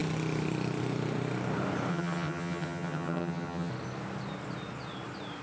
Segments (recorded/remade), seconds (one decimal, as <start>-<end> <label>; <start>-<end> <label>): 0.0-1.9 recorded; 1.9-3.7 remade; 3.7-5.4 recorded